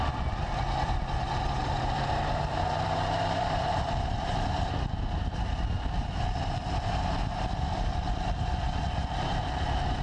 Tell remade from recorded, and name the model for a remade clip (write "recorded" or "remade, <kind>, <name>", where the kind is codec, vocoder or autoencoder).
remade, vocoder, BigVGAN v2